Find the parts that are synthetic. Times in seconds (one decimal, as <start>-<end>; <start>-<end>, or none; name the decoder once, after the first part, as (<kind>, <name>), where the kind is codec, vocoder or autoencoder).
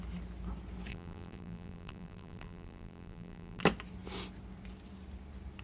0.9-3.6 (vocoder, BigVGAN v2)